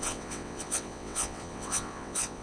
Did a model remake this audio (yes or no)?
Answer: yes